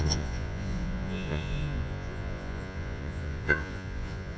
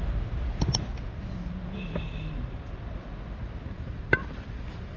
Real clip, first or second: second